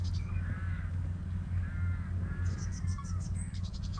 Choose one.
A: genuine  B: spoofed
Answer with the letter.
B